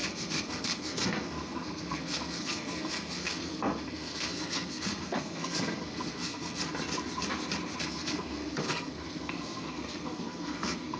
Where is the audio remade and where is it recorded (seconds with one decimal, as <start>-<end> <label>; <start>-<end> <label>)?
0.0-6.6 remade; 6.6-7.8 recorded; 7.8-11.0 remade